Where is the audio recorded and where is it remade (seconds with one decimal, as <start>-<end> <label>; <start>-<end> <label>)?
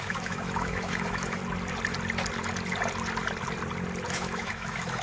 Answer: 0.0-1.4 remade; 1.4-4.1 recorded; 4.1-5.0 remade